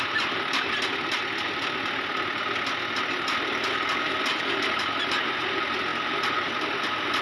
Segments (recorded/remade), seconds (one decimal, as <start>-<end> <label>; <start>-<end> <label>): 0.0-7.2 recorded